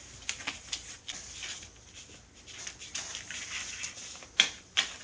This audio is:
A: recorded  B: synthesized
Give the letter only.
A